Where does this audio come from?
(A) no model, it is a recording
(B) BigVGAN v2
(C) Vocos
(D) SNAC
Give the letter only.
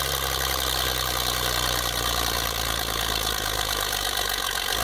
B